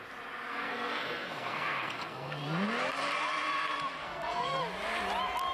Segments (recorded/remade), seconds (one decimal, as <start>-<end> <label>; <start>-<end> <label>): 0.0-0.5 recorded; 0.5-2.4 remade; 2.4-4.0 recorded; 4.0-4.6 remade; 4.6-5.5 recorded